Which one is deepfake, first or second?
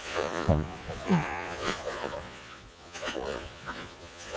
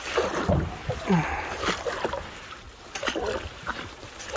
first